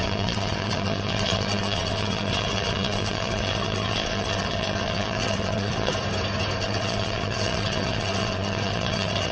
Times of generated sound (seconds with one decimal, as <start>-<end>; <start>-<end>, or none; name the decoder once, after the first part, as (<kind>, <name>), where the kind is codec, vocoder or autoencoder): 0.0-5.9 (vocoder, WaveNeXt); 6.6-9.3